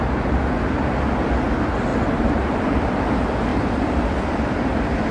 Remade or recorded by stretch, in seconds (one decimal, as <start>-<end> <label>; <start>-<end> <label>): 0.0-1.9 recorded; 1.9-2.8 remade; 2.8-5.1 recorded